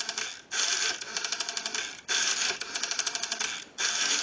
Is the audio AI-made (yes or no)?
no